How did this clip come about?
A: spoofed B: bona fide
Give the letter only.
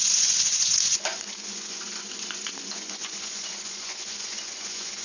A